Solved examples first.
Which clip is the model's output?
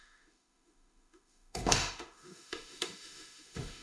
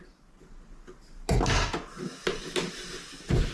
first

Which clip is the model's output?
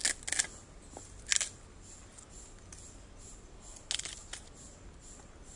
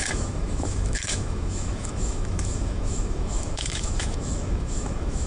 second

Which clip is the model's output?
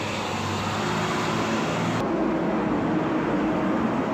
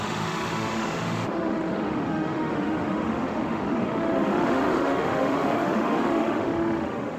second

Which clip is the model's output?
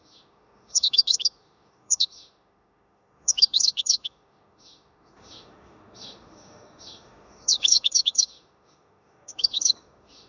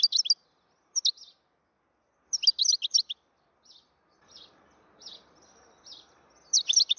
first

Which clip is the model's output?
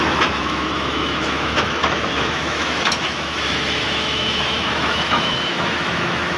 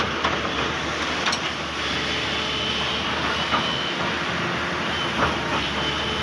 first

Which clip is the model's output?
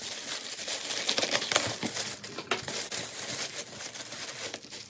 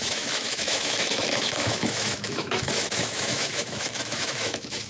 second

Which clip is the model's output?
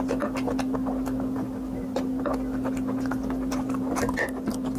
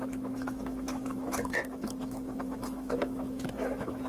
second